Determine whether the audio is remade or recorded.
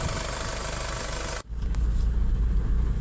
recorded